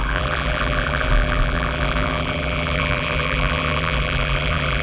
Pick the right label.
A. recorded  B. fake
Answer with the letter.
B